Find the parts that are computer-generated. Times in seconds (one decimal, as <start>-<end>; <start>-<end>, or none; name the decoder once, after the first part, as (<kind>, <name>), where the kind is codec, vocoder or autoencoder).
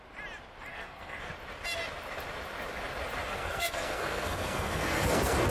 0.7-1.3 (codec, SNAC); 3.3-5.5